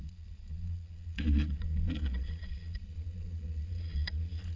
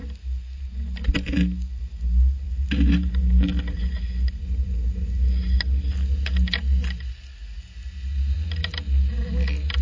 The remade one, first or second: first